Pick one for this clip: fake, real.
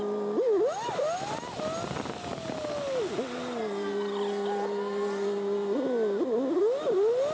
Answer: real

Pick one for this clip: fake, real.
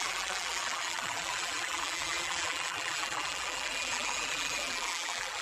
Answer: fake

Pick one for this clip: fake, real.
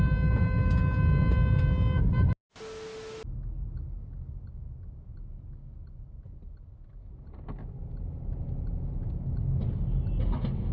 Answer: real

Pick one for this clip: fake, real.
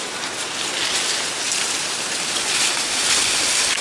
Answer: real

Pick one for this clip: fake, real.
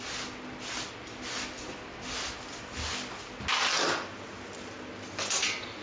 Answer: real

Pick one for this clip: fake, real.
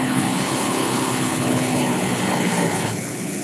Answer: fake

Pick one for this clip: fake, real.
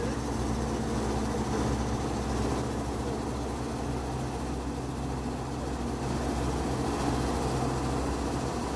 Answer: real